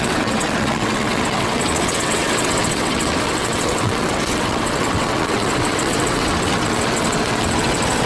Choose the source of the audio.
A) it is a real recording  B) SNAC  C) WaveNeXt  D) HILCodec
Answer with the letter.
C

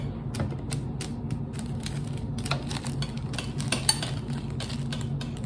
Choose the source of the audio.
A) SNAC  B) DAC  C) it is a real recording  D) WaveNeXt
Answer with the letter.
C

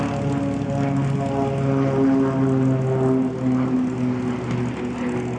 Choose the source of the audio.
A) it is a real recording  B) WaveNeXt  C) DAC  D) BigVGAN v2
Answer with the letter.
A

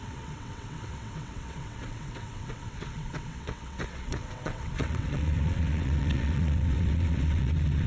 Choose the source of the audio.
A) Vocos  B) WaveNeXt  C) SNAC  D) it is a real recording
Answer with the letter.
B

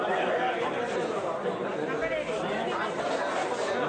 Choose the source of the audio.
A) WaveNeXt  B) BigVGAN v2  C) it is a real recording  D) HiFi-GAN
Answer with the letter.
C